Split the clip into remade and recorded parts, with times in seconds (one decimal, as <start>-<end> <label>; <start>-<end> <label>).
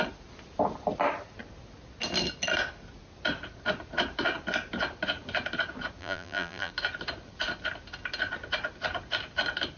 0.0-6.0 recorded; 6.0-6.7 remade; 6.7-9.8 recorded